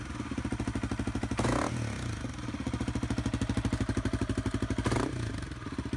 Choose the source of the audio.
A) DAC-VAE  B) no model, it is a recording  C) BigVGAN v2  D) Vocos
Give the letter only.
B